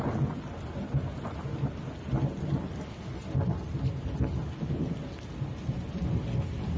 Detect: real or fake real